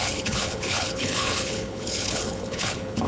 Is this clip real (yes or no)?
no